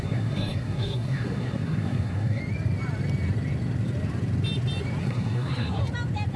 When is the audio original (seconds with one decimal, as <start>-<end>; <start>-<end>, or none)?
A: 2.4-5.0; 5.8-6.4